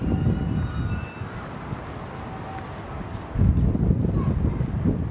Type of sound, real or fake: real